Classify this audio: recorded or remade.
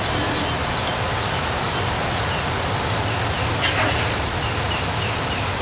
recorded